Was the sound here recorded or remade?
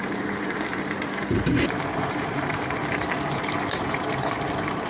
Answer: remade